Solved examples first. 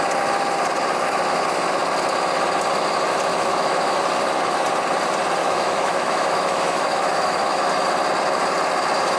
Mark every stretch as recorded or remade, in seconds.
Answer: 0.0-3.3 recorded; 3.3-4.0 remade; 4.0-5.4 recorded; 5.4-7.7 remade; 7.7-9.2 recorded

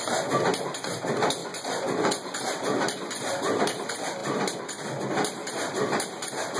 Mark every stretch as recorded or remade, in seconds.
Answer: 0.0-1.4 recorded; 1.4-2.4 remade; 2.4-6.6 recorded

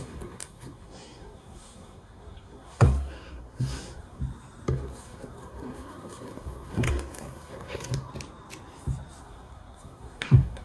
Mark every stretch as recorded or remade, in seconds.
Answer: 0.0-4.2 remade; 4.2-4.7 recorded; 4.7-8.1 remade; 8.1-9.2 recorded; 9.2-10.6 remade

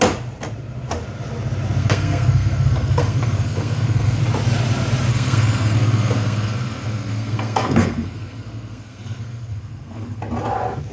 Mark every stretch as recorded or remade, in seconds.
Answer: 0.0-1.8 recorded; 1.8-4.2 remade; 4.2-5.1 recorded; 5.1-10.2 remade; 10.2-10.9 recorded